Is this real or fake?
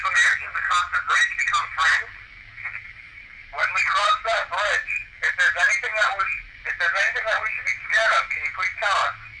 real